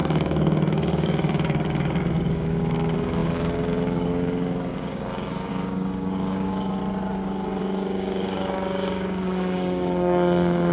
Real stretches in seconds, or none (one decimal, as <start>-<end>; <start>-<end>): 6.8-7.6